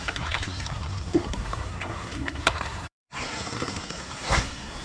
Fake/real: fake